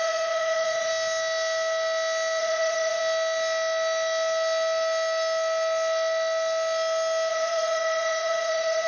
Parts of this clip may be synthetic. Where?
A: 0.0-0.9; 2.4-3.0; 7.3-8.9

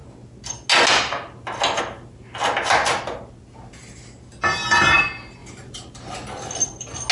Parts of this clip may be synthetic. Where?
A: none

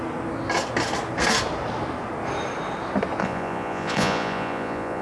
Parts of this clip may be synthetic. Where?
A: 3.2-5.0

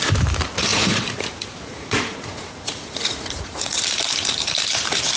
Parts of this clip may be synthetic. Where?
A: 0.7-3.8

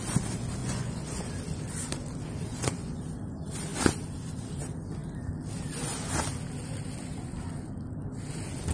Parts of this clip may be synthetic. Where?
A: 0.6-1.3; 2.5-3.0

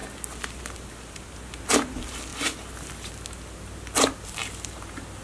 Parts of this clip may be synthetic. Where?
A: none

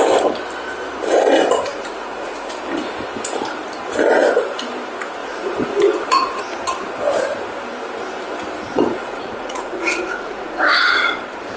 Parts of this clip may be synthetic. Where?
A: 1.7-2.5; 5.2-6.4; 8.7-11.1